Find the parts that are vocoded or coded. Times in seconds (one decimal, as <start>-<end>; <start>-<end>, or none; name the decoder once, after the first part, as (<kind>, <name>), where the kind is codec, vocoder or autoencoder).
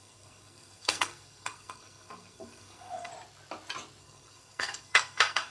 0.0-3.1 (codec, SNAC); 4.0-5.5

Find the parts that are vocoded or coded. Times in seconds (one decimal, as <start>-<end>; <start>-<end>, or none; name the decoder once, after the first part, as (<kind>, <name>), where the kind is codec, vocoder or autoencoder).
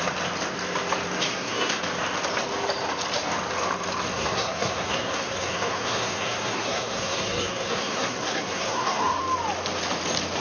1.3-1.8 (codec, SNAC); 4.1-9.2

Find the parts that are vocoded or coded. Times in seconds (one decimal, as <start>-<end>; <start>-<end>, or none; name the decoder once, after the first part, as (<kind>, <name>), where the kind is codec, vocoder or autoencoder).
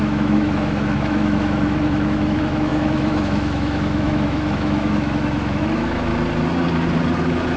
0.0-6.1 (autoencoder, DAC-VAE)